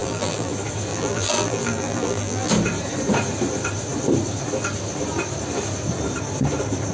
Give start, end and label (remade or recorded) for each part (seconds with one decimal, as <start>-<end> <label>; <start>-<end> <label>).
0.0-0.5 remade; 0.5-0.9 recorded; 0.9-2.5 remade; 2.5-6.9 recorded